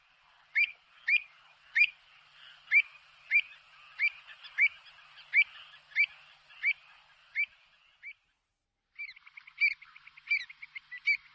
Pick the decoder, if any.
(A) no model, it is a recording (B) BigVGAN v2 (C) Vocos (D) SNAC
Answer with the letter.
A